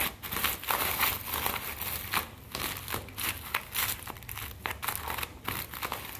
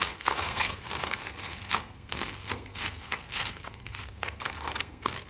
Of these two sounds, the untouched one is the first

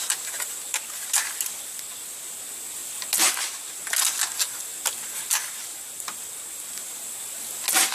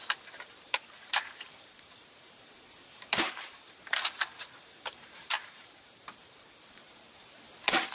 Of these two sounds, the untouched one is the first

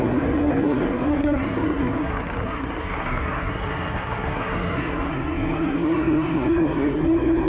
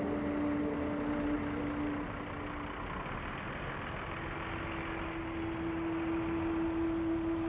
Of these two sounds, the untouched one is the second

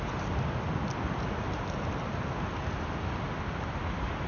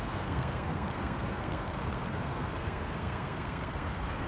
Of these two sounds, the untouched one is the first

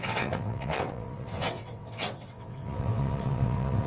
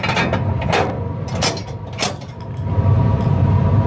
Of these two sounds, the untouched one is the second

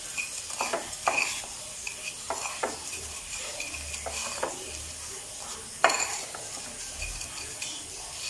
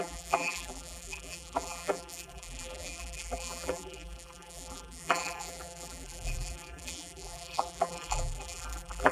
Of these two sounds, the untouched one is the first